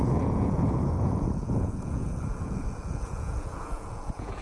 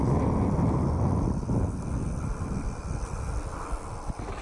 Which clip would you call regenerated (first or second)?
first